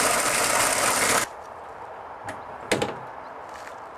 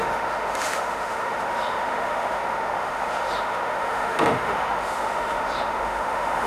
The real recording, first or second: first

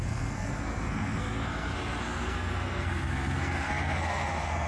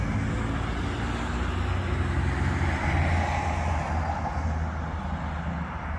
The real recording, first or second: second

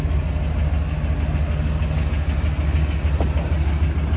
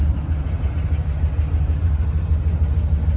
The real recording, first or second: first